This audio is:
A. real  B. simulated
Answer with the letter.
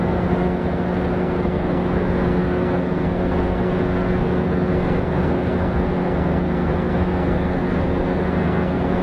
B